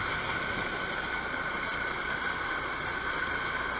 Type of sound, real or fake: real